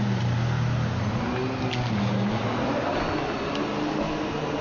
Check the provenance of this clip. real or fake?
real